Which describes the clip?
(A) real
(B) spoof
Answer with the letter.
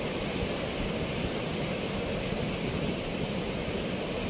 A